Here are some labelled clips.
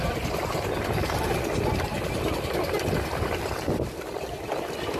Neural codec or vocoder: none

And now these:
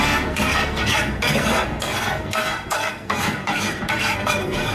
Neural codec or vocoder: codec, SNAC